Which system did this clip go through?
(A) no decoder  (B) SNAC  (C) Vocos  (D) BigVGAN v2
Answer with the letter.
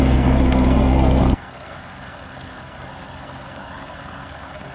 B